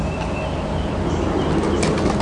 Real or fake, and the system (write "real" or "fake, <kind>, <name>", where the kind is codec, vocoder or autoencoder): real